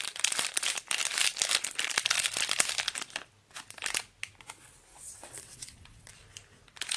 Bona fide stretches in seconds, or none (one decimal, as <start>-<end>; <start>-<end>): 0.0-4.9; 6.1-7.0